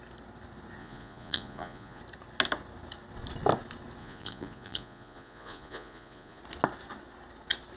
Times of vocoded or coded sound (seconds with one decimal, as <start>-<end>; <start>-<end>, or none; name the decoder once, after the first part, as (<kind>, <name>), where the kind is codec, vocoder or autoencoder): 0.8-2.0 (vocoder, Vocos); 4.0-6.4